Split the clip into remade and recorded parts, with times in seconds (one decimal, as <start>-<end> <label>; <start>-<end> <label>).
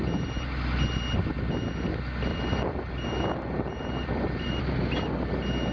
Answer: 0.0-2.3 recorded; 2.3-4.6 remade; 4.6-5.7 recorded